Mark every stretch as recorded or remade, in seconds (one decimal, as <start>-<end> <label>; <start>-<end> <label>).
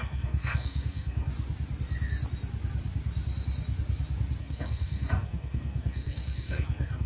0.0-1.3 remade; 1.3-4.4 recorded; 4.4-7.1 remade